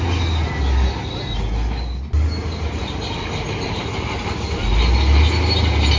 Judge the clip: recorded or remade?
recorded